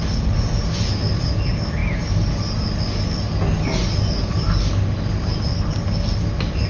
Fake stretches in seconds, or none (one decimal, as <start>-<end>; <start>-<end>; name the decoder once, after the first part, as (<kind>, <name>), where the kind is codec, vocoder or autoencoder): none